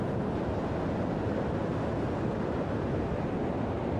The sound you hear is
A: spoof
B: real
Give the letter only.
B